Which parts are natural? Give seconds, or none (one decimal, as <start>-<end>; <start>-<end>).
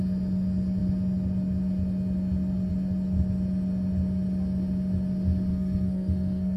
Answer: 0.0-5.5